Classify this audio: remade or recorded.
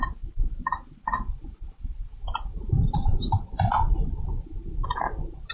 remade